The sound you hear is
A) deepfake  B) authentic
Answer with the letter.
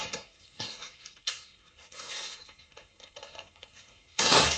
A